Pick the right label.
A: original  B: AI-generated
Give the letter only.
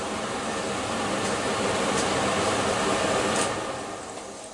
A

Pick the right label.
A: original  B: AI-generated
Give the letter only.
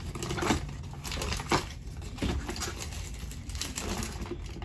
A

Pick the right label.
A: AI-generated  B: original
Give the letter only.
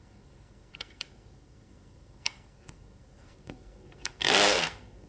A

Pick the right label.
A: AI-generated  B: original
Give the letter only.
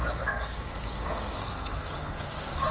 A